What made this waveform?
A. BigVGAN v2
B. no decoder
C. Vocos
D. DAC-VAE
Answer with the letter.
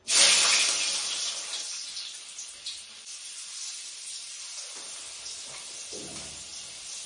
B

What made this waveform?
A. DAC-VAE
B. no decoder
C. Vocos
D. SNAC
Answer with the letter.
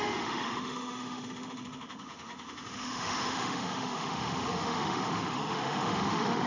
A